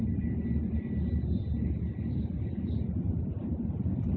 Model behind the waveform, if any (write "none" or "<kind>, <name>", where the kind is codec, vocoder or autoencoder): none